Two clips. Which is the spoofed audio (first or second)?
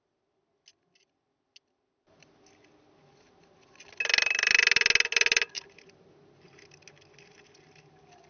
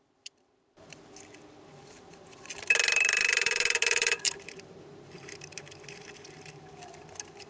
second